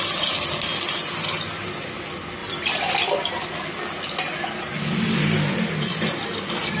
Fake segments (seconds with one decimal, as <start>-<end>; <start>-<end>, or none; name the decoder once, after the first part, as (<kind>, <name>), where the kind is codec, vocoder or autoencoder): none